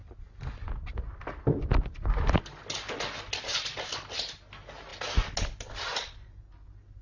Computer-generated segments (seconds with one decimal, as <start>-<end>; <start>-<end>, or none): 1.3-3.5; 4.3-4.9; 5.6-7.0